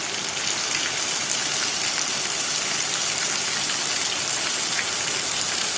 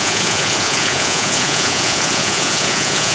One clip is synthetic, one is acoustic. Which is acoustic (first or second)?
first